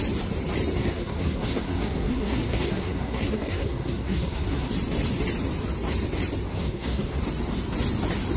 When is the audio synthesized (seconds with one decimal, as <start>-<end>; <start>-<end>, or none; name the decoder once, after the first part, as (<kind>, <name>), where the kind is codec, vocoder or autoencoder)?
0.8-4.7 (codec, SNAC); 6.5-7.2